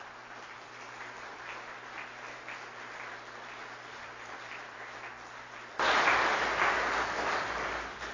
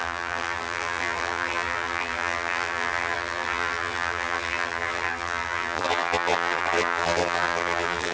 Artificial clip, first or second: second